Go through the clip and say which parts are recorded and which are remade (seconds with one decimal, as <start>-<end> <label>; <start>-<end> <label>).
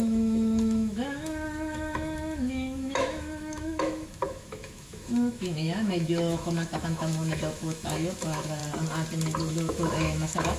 0.0-8.6 remade; 8.6-9.5 recorded; 9.5-10.6 remade